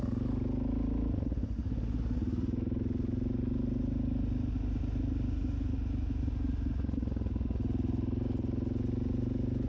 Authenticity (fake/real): real